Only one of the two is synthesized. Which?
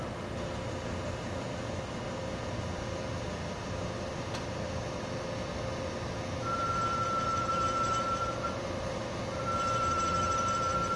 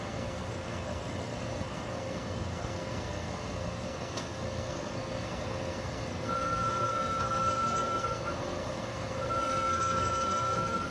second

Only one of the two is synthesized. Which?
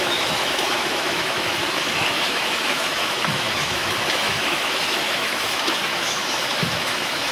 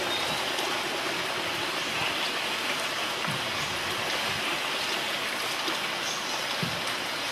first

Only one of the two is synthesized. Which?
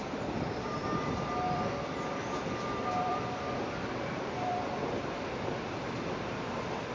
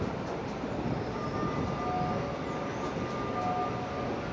first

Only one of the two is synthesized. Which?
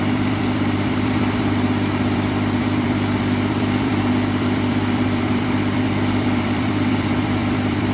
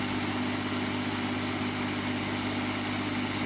first